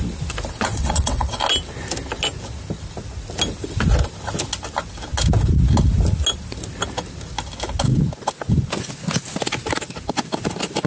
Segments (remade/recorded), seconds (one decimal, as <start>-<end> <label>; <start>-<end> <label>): 0.0-0.7 recorded; 0.7-1.3 remade; 1.3-10.9 recorded